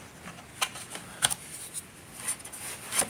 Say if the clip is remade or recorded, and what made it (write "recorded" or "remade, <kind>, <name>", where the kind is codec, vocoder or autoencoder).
recorded